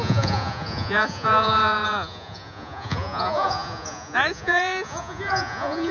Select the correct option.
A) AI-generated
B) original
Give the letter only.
A